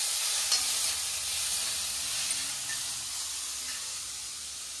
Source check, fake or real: real